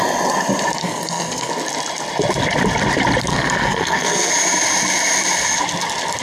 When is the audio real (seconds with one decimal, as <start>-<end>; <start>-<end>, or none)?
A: 0.0-0.8; 1.5-3.3; 4.3-6.2